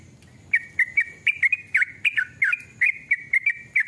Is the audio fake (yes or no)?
no